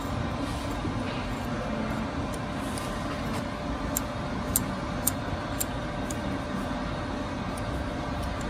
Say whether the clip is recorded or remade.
recorded